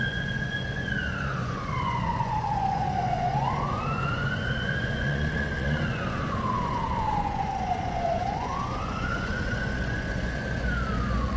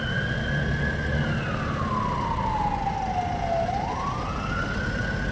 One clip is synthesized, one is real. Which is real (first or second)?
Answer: second